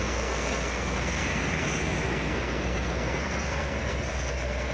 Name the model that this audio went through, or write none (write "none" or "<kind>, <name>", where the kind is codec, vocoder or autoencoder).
codec, SNAC